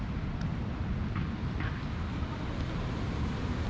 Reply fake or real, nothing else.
real